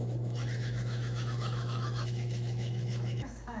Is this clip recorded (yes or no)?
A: no